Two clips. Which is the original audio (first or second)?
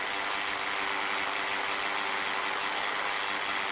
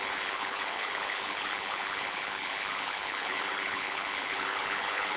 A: first